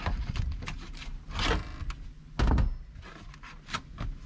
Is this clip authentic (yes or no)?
yes